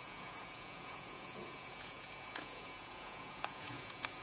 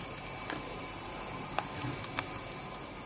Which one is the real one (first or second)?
second